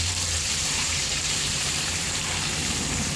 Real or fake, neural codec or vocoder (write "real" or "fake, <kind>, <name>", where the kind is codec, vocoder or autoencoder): fake, vocoder, BigVGAN v2